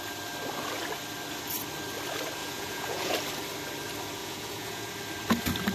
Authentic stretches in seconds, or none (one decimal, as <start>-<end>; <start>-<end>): 0.0-2.4; 3.1-4.2; 4.9-5.7